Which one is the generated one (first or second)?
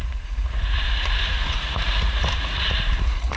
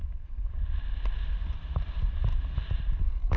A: first